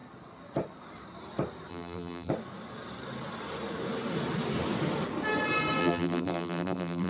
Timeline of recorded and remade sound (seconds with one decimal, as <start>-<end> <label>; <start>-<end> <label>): 0.0-1.7 recorded; 1.7-2.3 remade; 2.3-5.8 recorded; 5.8-7.1 remade